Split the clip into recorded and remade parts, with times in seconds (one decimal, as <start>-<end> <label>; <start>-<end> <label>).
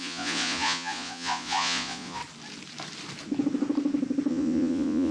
0.0-2.2 remade; 2.2-4.3 recorded; 4.3-5.1 remade